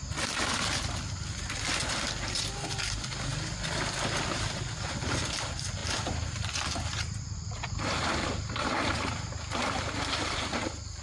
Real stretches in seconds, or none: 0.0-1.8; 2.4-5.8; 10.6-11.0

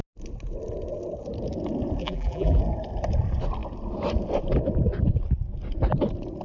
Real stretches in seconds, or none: 0.0-2.0; 2.6-6.4

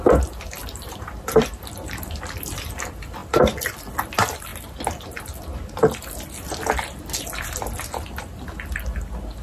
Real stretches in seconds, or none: 0.0-0.6; 1.6-9.4

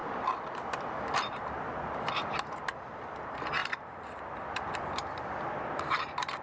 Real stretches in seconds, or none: 0.5-3.6; 4.7-6.4